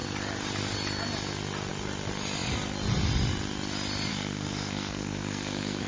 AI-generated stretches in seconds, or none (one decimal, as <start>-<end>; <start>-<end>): 4.1-5.9